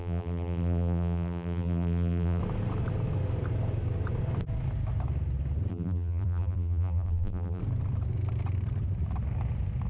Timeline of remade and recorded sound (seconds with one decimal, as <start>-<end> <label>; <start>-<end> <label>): 0.0-2.4 remade; 2.4-5.7 recorded; 5.7-7.6 remade; 7.6-9.9 recorded

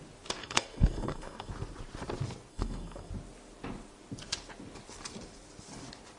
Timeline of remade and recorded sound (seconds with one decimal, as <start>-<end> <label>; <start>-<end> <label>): 0.0-0.4 recorded; 0.4-1.5 remade; 1.5-2.5 recorded; 2.5-3.1 remade; 3.1-6.2 recorded

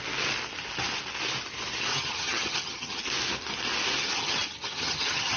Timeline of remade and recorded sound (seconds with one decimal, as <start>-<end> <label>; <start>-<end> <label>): 0.0-1.9 recorded; 1.9-3.0 remade; 3.0-4.0 recorded; 4.0-5.4 remade

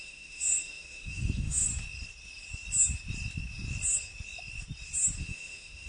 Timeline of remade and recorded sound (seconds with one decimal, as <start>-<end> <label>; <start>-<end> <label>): 0.0-1.7 remade; 1.7-5.2 recorded; 5.2-5.9 remade

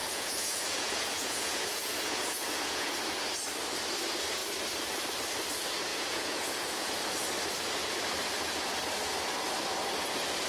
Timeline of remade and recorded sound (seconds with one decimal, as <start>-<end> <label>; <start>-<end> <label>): 0.0-3.0 remade; 3.0-5.9 recorded; 5.9-7.0 remade; 7.0-10.5 recorded

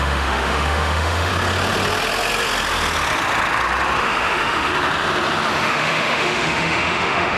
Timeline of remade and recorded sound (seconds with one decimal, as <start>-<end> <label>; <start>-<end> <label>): 0.0-1.3 remade; 1.3-4.0 recorded; 4.0-4.7 remade; 4.7-5.5 recorded; 5.5-7.4 remade

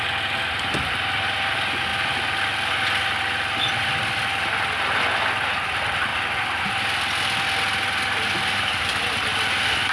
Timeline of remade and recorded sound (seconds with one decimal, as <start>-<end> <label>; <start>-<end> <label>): 0.0-9.9 recorded

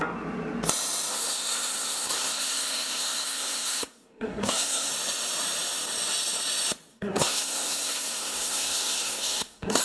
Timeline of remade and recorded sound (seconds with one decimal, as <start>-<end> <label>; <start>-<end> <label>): 0.0-1.1 recorded; 1.1-4.9 remade; 4.9-6.9 recorded; 6.9-9.8 remade